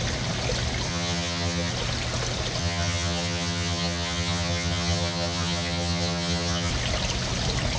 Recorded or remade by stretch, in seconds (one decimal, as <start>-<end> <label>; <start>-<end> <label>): 0.0-0.9 recorded; 0.9-1.7 remade; 1.7-2.6 recorded; 2.6-6.7 remade; 6.7-7.8 recorded